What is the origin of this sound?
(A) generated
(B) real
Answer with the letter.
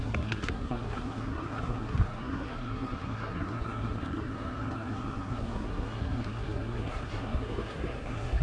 A